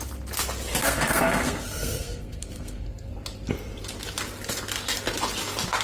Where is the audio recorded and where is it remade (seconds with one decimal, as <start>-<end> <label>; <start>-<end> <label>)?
0.0-0.8 recorded; 0.8-3.1 remade; 3.1-5.8 recorded